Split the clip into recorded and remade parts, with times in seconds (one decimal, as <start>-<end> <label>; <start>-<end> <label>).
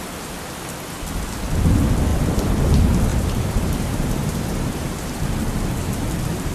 0.0-3.1 recorded; 3.1-5.2 remade; 5.2-6.5 recorded